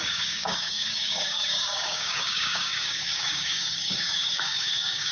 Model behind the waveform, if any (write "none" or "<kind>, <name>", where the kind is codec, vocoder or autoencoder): codec, DAC